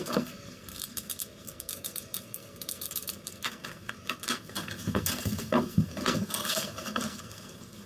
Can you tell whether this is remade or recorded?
remade